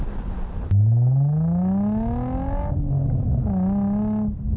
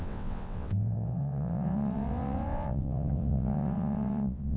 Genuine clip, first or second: first